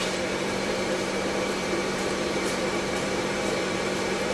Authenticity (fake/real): fake